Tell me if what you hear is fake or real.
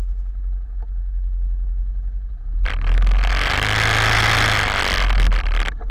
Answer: real